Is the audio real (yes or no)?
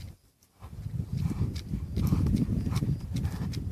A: no